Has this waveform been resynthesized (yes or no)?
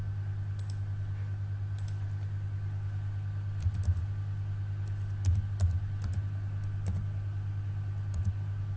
no